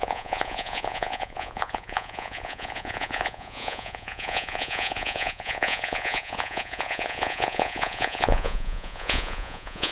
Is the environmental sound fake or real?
fake